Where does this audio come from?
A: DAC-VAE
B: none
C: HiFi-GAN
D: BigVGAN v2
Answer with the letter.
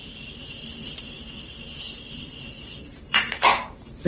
D